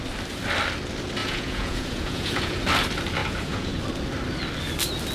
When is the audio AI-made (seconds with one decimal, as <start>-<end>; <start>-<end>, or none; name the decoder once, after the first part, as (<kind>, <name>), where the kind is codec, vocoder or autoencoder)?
1.2-2.6 (vocoder, Vocos); 3.2-3.8